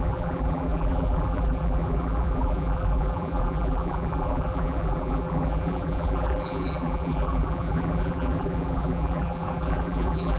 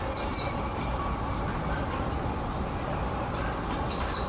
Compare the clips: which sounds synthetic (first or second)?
first